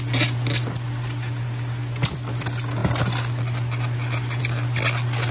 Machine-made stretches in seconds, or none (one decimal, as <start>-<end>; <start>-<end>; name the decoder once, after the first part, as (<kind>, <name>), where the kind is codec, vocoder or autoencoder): none